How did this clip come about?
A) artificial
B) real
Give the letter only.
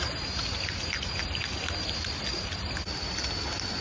B